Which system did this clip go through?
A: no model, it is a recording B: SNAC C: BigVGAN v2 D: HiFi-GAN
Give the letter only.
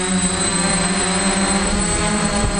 C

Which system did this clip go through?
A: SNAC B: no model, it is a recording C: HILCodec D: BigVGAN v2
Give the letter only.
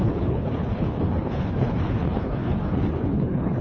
C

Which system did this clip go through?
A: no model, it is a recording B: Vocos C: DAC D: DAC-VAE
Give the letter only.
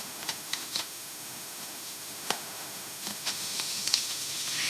D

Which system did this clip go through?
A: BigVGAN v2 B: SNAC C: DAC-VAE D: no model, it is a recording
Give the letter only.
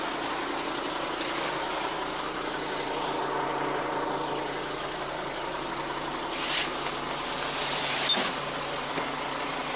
D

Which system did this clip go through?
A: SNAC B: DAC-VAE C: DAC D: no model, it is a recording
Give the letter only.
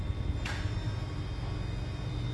D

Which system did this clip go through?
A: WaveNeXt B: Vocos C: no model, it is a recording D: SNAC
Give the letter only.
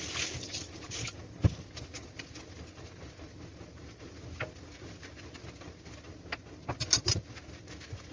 C